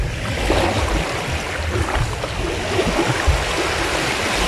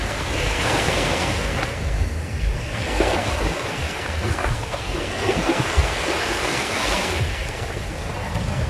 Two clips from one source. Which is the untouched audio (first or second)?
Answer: first